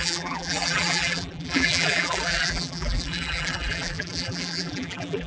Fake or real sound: fake